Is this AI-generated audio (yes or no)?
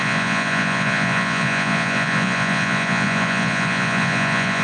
yes